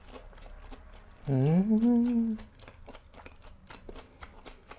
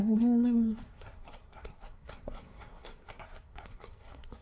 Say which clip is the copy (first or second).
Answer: second